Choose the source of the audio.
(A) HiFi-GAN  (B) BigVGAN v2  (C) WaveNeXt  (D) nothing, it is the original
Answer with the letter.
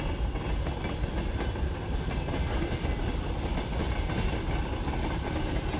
D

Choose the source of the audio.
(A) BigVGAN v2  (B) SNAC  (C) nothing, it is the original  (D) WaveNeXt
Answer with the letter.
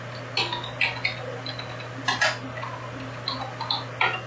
C